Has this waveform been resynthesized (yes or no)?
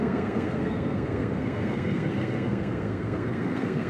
yes